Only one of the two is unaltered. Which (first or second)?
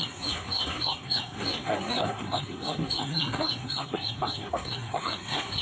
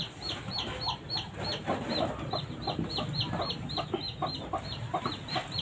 second